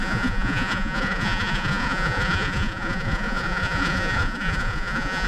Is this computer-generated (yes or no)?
yes